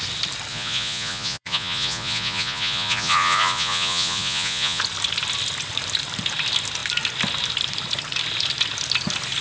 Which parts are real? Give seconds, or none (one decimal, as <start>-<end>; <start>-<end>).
0.0-0.5; 4.8-9.4